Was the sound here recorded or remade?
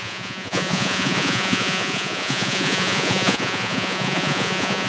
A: remade